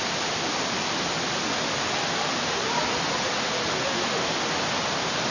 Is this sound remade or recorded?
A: recorded